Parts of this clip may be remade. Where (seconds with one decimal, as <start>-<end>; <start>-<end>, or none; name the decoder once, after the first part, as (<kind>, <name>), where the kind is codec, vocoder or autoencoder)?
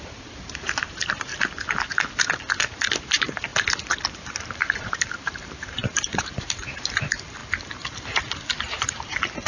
0.0-1.3 (vocoder, BigVGAN v2); 3.0-3.5; 4.5-7.4; 8.6-9.5